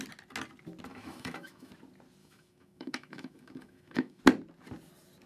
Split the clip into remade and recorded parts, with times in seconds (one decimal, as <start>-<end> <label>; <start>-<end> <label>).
0.0-0.9 recorded; 0.9-1.7 remade; 1.7-2.2 recorded; 2.2-4.2 remade; 4.2-5.3 recorded